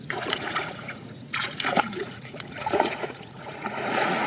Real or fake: fake